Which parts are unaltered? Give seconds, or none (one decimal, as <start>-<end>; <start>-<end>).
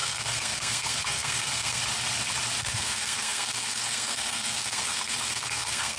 1.8-2.6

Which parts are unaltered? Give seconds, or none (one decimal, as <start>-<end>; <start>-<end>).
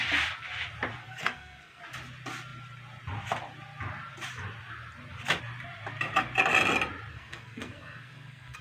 0.0-1.0; 1.8-7.1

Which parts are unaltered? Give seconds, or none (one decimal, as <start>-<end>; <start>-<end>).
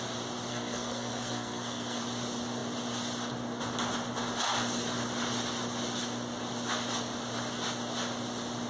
0.0-0.5; 2.0-8.7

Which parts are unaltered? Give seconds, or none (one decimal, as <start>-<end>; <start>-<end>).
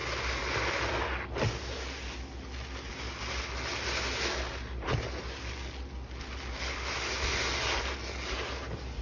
0.0-9.0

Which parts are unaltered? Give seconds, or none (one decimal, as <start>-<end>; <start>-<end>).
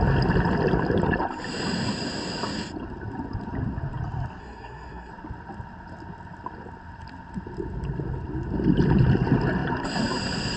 0.0-4.4; 5.1-10.6